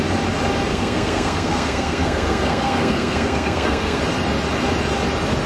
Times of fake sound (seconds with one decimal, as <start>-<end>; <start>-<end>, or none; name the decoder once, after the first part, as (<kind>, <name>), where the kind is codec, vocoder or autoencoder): 0.7-4.0 (codec, SNAC)